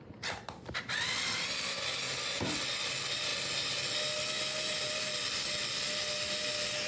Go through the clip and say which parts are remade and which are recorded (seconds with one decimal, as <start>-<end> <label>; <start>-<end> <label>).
0.0-6.9 recorded